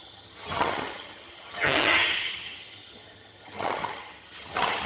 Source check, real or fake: fake